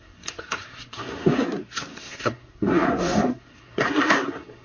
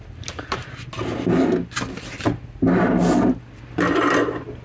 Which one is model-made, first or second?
first